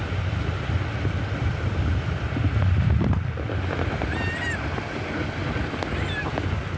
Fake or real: real